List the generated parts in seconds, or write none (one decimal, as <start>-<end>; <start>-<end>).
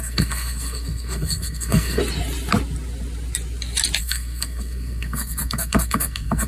0.0-2.0; 4.0-6.5